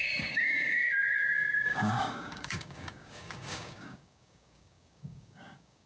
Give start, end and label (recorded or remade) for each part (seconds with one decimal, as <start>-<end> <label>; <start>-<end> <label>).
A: 0.0-5.9 remade